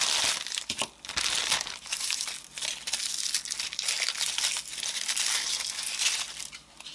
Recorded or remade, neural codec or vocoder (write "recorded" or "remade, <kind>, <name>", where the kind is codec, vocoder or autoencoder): recorded